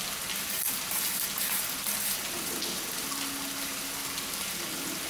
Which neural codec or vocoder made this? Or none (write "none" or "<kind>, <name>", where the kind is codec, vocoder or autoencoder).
none